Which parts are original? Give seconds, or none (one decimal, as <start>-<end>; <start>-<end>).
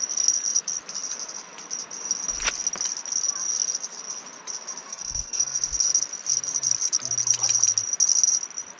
0.0-4.9; 5.6-8.8